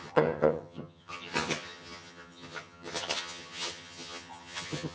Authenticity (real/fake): fake